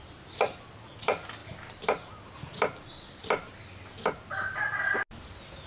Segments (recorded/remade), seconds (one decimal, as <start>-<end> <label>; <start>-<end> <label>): 0.0-5.7 recorded